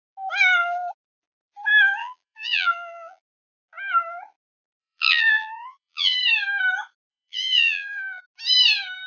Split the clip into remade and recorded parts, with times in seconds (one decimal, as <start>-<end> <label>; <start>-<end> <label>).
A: 0.0-2.0 recorded; 2.0-3.6 remade; 3.6-4.8 recorded; 4.8-6.2 remade; 6.2-7.1 recorded; 7.1-8.2 remade; 8.2-9.1 recorded